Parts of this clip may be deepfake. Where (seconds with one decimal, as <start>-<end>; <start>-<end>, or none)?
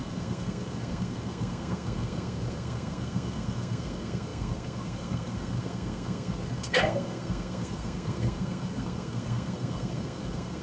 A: 0.0-10.6